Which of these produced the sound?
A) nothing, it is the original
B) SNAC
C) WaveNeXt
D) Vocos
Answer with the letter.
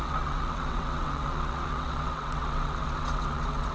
C